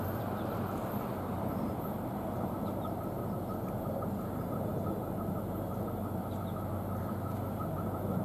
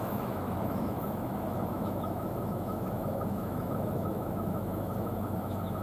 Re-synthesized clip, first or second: second